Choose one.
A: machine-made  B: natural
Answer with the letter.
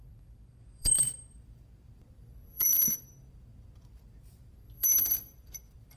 A